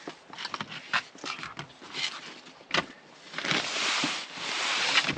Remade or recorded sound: recorded